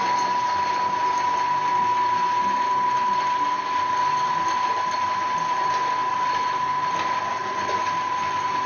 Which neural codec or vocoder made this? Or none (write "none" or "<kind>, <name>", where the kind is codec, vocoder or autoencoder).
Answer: none